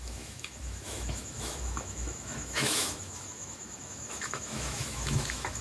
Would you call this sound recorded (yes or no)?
no